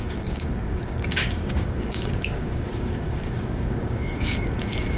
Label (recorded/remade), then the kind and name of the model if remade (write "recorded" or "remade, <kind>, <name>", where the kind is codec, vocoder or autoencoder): remade, codec, DAC